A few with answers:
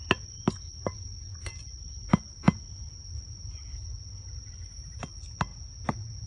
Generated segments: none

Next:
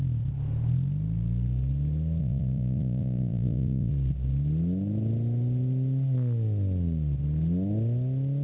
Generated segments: 2.2-3.9 (vocoder, Vocos)

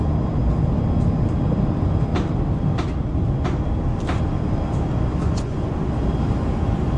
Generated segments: 5.2-5.9 (vocoder, Vocos)

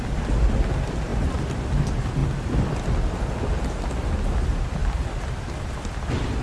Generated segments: none

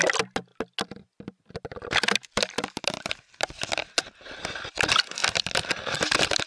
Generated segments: none

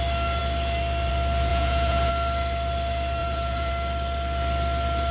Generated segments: 1.5-2.1 (vocoder, Vocos); 3.2-3.7

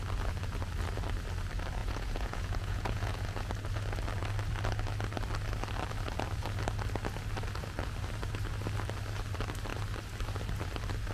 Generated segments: 1.8-3.5 (vocoder, Vocos)

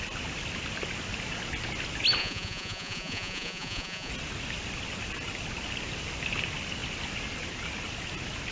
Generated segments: 2.2-4.1 (vocoder, Vocos)